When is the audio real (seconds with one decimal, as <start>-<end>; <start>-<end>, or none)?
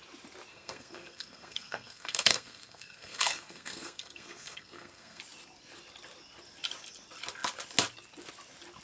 0.0-0.5; 5.2-8.8